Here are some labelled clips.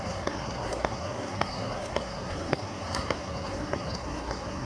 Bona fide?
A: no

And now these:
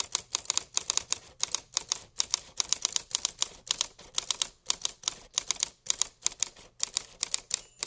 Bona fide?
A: no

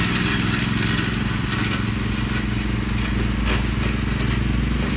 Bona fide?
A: yes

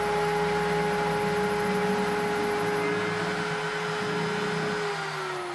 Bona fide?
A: yes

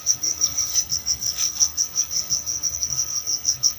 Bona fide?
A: no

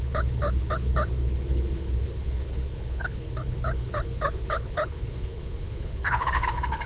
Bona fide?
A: no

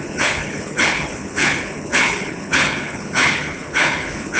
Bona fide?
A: no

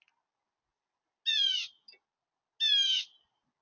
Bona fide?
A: yes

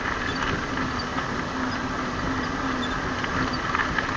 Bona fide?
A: yes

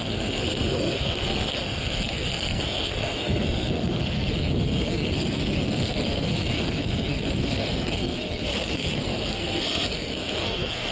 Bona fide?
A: no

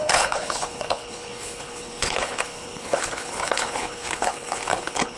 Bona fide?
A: no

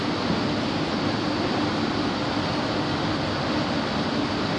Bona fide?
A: yes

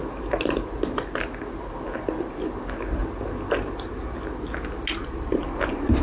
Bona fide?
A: yes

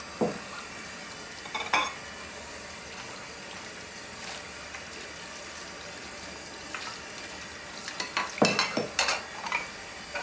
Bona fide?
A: yes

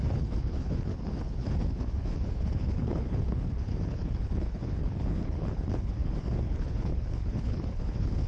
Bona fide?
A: no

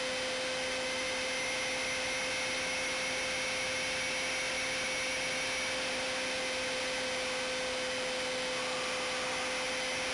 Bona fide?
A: yes